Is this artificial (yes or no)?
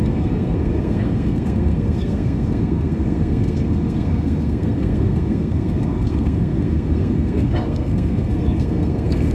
yes